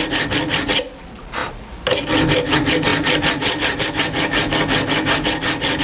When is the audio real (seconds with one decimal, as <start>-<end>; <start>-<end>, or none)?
0.0-5.8